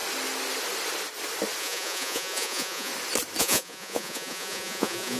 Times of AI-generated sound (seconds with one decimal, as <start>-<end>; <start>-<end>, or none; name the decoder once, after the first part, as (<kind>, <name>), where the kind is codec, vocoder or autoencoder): 1.6-2.9 (vocoder, Vocos); 3.4-5.2